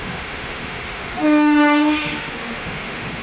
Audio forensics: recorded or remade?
remade